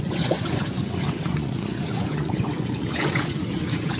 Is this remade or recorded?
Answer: remade